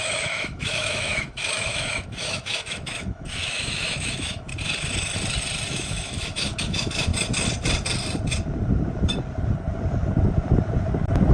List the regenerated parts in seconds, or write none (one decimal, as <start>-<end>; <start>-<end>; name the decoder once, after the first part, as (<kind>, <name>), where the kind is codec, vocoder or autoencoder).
0.0-4.5 (autoencoder, DAC-VAE); 5.7-7.1